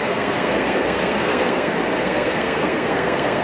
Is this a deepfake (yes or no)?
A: yes